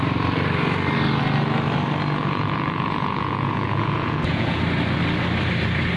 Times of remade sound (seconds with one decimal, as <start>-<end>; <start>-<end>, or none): 2.2-4.6